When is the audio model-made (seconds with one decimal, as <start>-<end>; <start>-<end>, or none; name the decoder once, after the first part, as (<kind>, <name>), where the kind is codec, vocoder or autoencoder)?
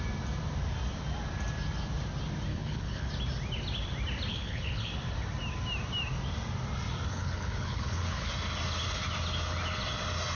2.5-3.1 (codec, HILCodec); 4.3-4.9; 7.1-8.3